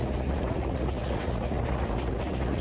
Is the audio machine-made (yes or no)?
yes